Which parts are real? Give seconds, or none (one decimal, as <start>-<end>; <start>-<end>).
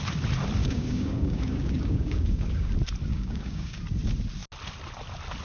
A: 0.0-0.6; 2.7-3.1; 3.8-5.4